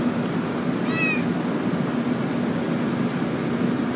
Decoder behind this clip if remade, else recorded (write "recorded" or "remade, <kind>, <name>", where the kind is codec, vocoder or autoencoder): recorded